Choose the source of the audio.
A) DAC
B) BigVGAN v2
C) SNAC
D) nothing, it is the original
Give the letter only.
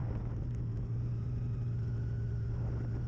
D